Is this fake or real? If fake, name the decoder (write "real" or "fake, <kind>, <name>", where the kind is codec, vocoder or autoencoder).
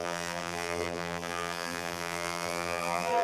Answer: fake, vocoder, BigVGAN v2